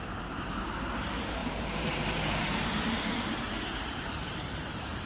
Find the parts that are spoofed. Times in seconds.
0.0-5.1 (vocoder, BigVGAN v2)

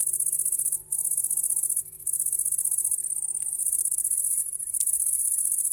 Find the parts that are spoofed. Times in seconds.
3.4-5.7 (vocoder, BigVGAN v2)

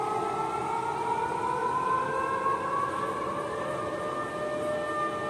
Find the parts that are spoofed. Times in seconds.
1.6-4.8 (vocoder, BigVGAN v2)